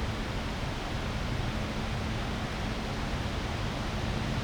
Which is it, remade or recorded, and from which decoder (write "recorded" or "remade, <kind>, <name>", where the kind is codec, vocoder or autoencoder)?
recorded